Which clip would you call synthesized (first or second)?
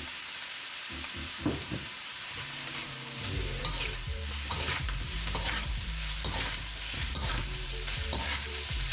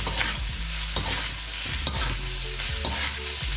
first